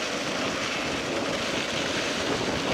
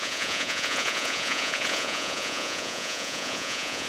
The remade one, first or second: second